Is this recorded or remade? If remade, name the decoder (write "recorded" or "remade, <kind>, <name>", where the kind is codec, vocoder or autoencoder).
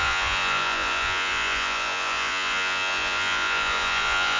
remade, vocoder, Vocos